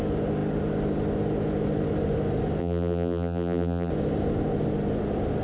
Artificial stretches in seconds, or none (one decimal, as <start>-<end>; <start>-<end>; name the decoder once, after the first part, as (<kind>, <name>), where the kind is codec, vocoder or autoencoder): 2.6-3.9 (vocoder, BigVGAN v2)